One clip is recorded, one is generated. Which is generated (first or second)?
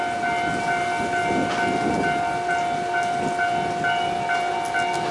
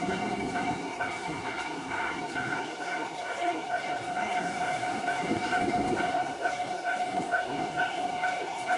second